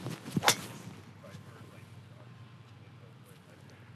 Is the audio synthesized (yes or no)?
no